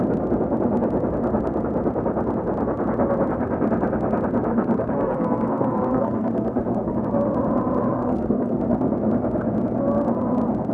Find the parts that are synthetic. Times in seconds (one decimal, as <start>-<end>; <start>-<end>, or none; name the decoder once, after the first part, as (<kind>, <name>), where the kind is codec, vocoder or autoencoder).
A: 4.5-7.0 (codec, SNAC); 7.8-8.6